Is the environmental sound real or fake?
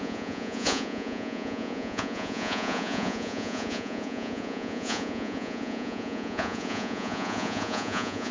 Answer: fake